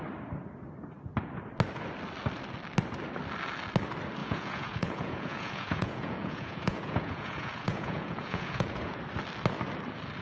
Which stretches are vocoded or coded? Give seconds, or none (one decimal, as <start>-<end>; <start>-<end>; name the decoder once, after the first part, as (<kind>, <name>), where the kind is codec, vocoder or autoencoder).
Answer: 4.2-9.0 (vocoder, Vocos)